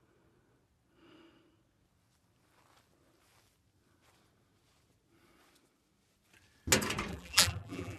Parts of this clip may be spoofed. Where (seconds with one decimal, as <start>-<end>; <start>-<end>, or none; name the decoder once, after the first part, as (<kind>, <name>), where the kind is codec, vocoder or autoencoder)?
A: 7.1-8.0 (vocoder, BigVGAN v2)